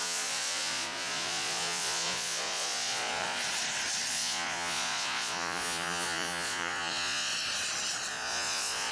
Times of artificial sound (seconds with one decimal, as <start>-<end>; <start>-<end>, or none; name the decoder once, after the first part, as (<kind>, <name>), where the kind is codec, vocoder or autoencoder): 0.0-3.4 (vocoder, Vocos); 4.1-7.3; 8.1-8.9